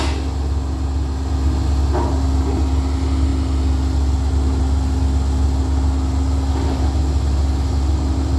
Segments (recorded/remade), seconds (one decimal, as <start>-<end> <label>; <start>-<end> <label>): 0.0-8.4 recorded